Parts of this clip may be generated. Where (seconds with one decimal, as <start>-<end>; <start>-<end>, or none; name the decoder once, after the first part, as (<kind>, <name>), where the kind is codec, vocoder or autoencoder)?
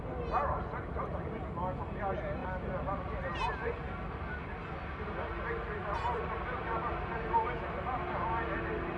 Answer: 5.8-7.5 (vocoder, BigVGAN v2)